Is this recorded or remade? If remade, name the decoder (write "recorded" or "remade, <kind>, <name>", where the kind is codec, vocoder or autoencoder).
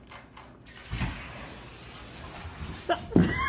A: recorded